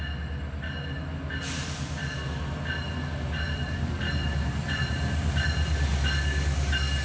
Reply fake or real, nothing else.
real